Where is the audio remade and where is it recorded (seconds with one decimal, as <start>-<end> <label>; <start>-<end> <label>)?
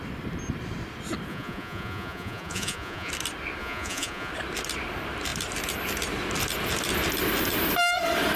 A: 0.0-1.3 recorded; 1.3-3.1 remade; 3.1-3.6 recorded; 3.6-4.3 remade; 4.3-8.4 recorded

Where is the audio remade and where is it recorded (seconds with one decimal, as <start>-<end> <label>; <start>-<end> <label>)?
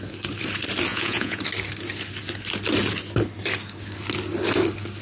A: 0.0-0.9 recorded; 0.9-1.4 remade; 1.4-5.0 recorded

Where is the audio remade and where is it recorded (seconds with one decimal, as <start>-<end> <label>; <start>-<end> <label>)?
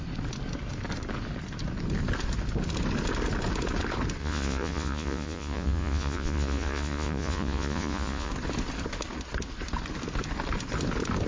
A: 0.0-4.2 recorded; 4.2-8.3 remade; 8.3-11.3 recorded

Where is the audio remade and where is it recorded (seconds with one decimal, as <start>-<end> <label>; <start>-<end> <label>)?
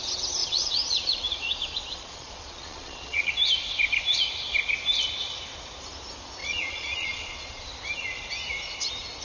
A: 0.0-0.4 recorded; 0.4-3.3 remade; 3.3-6.4 recorded; 6.4-7.5 remade; 7.5-9.2 recorded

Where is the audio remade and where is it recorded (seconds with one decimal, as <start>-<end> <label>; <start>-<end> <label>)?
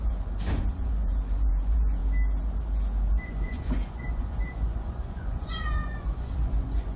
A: 0.0-2.0 remade; 2.0-3.1 recorded; 3.1-7.0 remade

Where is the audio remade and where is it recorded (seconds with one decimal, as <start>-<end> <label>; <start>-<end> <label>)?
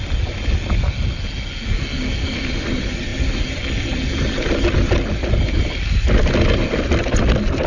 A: 0.0-7.7 recorded